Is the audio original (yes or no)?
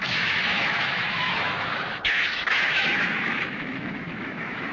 no